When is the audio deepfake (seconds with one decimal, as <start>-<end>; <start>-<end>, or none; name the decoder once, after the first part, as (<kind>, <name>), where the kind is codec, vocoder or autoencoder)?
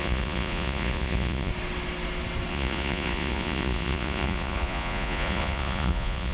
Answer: 0.0-1.5 (vocoder, Vocos); 2.5-6.3